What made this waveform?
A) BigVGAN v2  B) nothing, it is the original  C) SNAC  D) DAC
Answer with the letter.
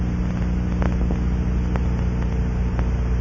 B